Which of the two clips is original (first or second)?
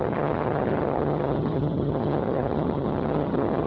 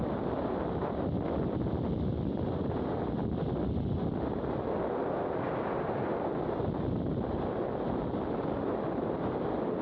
second